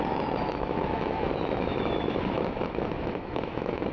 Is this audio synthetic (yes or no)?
yes